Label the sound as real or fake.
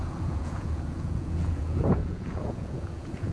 fake